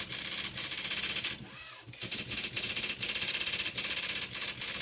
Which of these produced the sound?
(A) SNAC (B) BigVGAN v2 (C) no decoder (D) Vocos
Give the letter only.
C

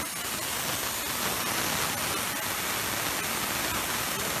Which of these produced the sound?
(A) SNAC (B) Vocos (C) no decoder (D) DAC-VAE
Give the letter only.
C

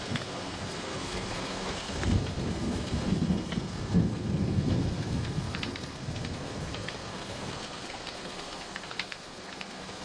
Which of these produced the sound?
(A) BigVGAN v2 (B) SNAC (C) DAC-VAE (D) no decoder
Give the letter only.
B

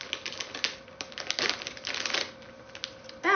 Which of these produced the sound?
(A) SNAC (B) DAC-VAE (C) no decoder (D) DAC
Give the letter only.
C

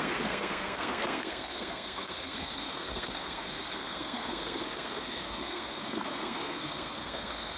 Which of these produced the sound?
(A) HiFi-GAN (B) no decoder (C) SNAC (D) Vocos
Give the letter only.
C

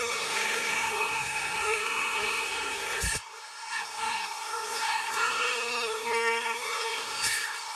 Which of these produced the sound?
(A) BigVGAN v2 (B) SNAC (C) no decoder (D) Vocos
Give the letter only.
B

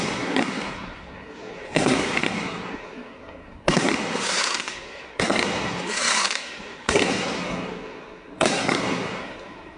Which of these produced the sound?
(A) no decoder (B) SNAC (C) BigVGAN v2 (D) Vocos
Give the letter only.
B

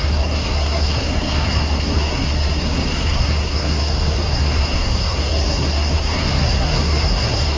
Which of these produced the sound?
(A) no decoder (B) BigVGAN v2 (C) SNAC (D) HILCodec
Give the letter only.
C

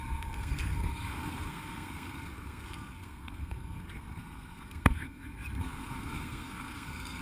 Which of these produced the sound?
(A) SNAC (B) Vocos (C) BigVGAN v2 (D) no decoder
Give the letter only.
A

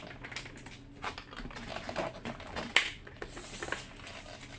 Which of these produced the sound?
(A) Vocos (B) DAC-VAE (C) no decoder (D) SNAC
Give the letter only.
C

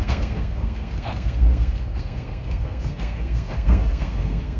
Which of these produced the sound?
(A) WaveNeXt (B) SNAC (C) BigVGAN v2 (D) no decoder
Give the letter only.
B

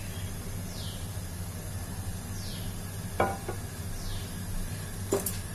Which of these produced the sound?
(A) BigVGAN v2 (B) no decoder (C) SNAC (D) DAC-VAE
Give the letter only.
B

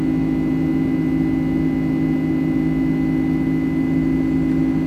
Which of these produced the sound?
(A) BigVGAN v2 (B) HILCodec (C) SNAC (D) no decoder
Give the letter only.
D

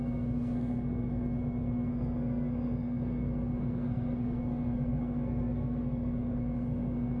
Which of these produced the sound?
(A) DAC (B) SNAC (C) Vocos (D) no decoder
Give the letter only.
B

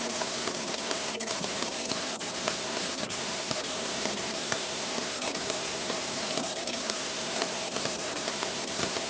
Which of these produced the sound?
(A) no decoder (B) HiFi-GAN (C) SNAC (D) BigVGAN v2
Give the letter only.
C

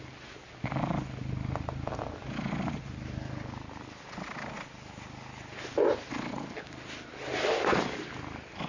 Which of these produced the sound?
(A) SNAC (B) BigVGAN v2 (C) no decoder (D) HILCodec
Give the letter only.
C